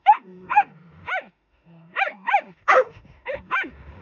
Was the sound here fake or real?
fake